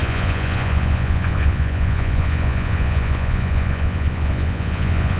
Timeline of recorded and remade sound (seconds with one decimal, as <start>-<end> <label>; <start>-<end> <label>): 0.0-5.2 remade